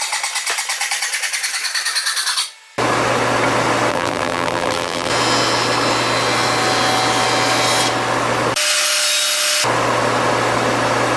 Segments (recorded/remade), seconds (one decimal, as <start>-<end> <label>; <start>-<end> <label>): 0.0-3.9 recorded; 3.9-5.1 remade; 5.1-11.2 recorded